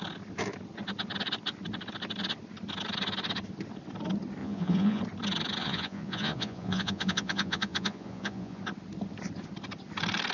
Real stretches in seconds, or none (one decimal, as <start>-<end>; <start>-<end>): 0.0-4.4; 5.0-5.6; 8.6-10.3